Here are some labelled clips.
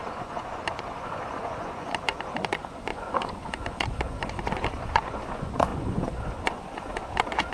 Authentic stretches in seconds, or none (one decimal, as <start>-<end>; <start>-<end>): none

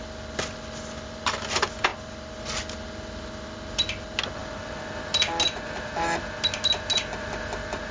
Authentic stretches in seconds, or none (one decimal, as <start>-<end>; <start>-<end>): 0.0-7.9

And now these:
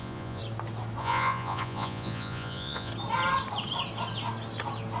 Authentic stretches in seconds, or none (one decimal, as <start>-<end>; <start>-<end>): 0.4-1.0; 2.9-5.0

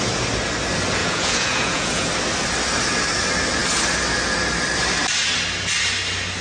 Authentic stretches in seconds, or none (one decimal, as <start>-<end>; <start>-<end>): 0.0-1.0; 2.1-6.4

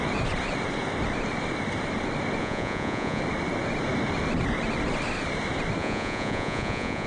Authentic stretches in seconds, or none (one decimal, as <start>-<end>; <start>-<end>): 0.0-2.4; 3.2-5.8

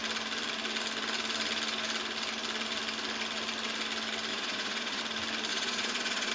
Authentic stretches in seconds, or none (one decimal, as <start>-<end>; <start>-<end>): 0.0-4.3; 5.0-5.5

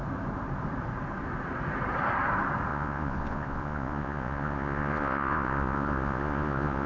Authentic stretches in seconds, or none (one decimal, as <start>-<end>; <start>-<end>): 0.0-2.7